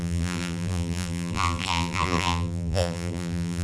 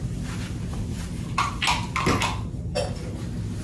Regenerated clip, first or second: first